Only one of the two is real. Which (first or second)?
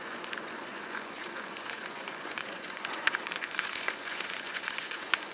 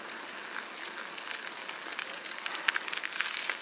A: second